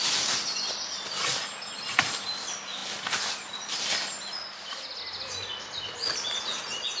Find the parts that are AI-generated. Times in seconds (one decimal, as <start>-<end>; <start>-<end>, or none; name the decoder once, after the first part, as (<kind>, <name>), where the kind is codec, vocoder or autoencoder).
none